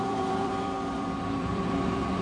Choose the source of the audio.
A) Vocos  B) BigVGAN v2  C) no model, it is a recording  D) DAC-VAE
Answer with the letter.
B